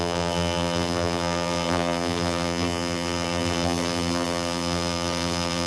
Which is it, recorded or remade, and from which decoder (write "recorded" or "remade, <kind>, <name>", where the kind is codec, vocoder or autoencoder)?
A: remade, vocoder, BigVGAN v2